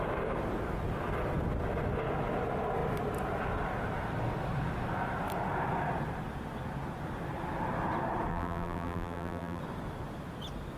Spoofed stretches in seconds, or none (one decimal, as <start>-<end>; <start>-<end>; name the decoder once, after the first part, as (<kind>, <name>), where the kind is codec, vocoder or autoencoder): 8.3-9.6 (vocoder, BigVGAN v2)